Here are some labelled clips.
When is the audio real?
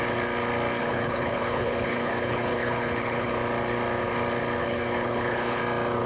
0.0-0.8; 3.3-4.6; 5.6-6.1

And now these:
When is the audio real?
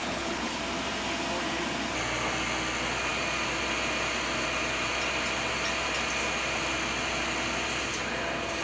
0.6-8.6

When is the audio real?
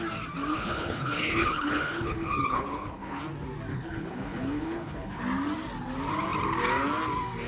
0.0-0.5; 3.2-3.7; 5.2-7.5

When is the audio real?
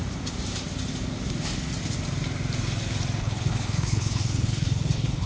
0.0-3.2